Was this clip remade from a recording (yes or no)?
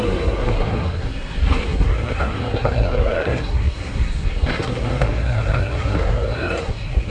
yes